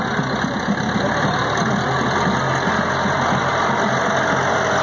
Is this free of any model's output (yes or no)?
yes